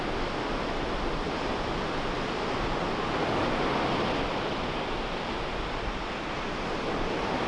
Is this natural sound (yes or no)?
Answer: yes